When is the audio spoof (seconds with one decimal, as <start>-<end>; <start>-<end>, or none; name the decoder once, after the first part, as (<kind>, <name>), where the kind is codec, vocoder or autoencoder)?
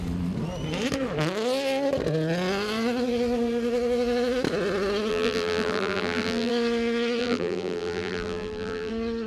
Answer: 5.1-6.5 (vocoder, BigVGAN v2); 7.2-8.9